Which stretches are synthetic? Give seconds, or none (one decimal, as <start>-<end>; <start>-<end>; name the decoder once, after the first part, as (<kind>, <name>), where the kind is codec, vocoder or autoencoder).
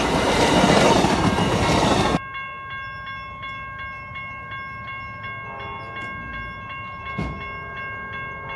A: none